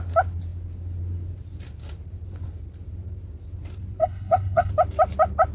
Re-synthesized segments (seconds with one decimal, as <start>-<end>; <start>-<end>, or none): 4.0-4.7